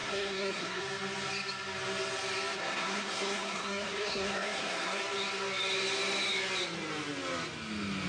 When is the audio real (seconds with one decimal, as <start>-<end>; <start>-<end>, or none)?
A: 0.8-2.6; 5.0-8.1